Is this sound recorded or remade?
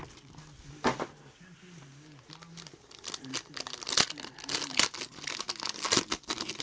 recorded